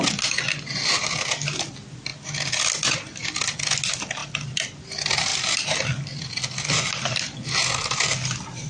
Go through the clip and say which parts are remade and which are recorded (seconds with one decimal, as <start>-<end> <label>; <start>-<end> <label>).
0.0-4.2 recorded; 4.2-4.8 remade; 4.8-8.7 recorded